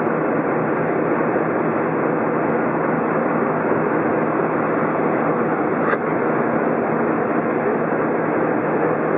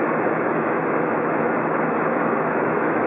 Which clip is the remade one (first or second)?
second